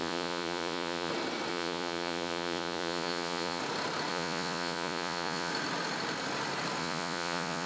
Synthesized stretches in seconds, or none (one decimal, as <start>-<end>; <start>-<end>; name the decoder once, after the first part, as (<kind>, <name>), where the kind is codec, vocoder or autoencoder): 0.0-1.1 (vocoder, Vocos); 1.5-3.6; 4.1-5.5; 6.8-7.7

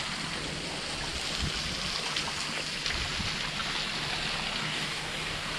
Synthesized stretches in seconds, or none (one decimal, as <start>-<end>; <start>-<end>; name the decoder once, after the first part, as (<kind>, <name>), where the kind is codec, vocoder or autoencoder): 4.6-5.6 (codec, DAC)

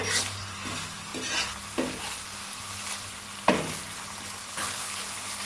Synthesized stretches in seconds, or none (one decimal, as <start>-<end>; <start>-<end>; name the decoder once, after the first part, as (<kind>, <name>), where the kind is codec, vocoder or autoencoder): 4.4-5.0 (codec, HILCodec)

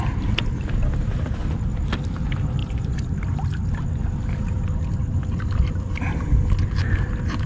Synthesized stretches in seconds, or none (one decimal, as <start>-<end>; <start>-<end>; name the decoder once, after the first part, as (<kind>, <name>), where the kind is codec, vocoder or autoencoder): none

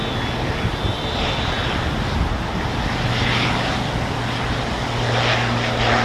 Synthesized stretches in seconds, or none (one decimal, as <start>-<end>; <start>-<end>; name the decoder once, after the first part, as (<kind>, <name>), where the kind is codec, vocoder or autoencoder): none